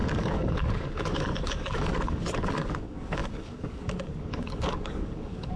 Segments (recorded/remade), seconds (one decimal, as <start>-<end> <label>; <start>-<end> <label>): 0.0-5.6 remade